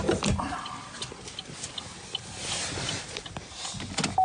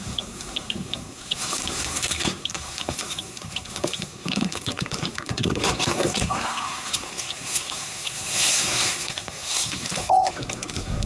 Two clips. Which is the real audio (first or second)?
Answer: first